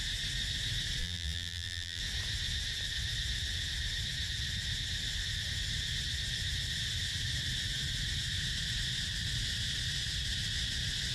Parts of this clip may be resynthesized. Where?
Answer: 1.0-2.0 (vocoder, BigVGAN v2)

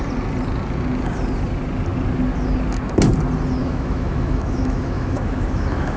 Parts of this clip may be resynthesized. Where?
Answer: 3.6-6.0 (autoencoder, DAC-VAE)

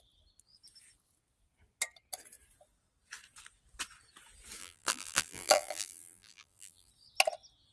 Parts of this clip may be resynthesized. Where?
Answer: 4.6-6.9 (vocoder, BigVGAN v2)

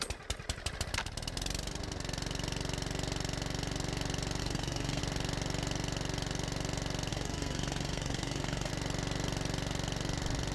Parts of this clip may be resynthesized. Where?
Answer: 4.4-5.0 (codec, SNAC); 7.1-8.7

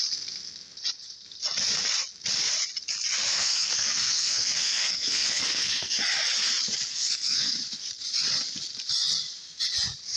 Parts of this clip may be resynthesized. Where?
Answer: 3.3-6.0 (codec, SNAC); 6.9-7.5

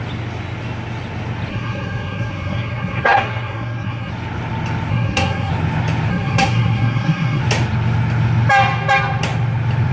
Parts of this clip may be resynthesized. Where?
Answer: 1.5-4.1 (codec, SNAC); 4.9-5.5; 6.1-7.4

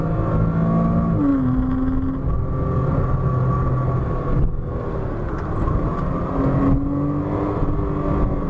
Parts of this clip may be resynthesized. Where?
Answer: none

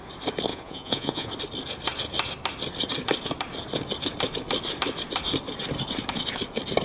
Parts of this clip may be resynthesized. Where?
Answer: 0.5-1.3 (vocoder, Vocos)